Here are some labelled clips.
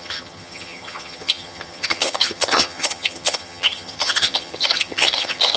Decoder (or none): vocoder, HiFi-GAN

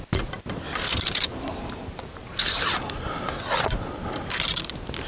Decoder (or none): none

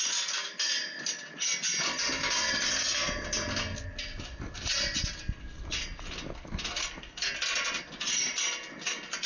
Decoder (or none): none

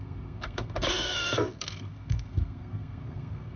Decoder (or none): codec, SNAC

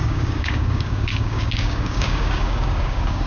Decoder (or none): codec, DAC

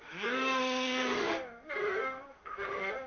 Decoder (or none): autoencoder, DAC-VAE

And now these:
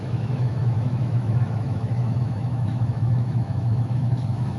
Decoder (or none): autoencoder, DAC-VAE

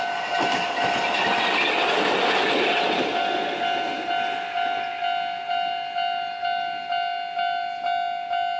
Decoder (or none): none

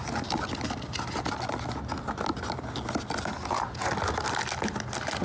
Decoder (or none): none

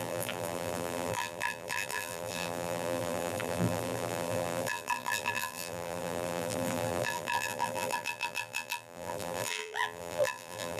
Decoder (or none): vocoder, BigVGAN v2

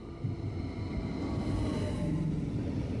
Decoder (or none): none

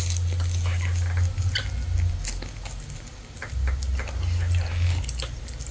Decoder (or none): none